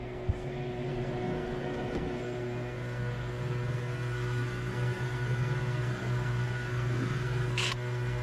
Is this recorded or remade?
remade